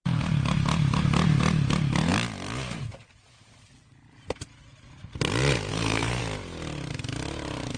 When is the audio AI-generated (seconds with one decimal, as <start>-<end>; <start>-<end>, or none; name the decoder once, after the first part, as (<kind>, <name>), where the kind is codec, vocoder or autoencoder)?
5.7-6.2 (codec, SNAC)